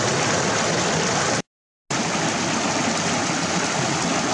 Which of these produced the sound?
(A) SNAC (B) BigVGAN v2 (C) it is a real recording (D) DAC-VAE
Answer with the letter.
C